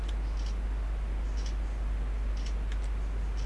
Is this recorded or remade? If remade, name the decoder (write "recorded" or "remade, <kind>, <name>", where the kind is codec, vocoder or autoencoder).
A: recorded